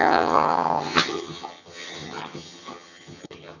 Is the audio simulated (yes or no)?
yes